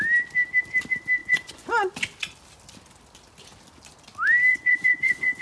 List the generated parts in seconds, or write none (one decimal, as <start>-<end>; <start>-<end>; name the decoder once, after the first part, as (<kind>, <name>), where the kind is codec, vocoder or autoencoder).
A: 1.2-1.9 (vocoder, Vocos); 4.5-5.4